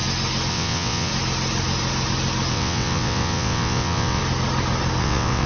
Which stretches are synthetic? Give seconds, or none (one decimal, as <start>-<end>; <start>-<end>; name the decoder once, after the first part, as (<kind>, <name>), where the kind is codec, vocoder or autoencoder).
0.5-1.1 (vocoder, WaveNeXt); 2.5-4.2; 5.0-5.5